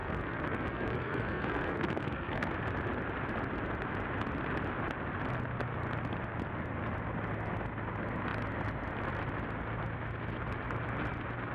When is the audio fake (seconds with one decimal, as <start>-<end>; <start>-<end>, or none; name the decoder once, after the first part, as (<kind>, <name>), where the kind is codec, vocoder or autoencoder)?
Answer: 0.0-2.5 (codec, SNAC)